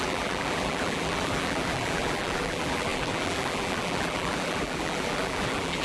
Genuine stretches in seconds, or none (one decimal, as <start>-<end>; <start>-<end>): none

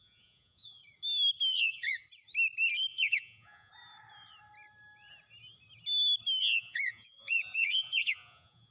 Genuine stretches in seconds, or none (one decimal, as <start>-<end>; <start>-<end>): 0.8-1.6; 2.0-2.9; 3.7-6.4